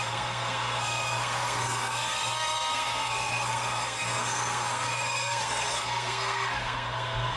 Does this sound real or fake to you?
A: fake